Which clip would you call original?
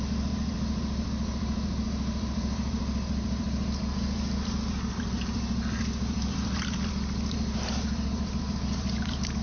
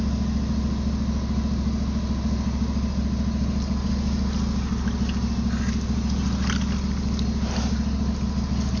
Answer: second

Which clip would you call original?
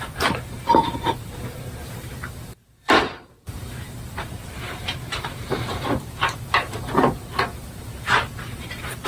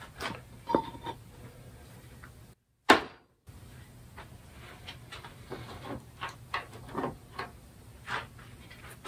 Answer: second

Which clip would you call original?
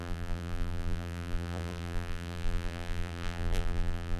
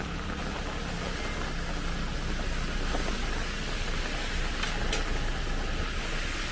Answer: second